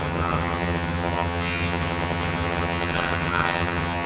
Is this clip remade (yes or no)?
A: yes